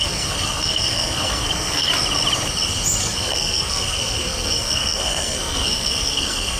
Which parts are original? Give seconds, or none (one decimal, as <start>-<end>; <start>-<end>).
1.9-3.0